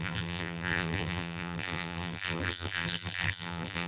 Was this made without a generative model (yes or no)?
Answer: no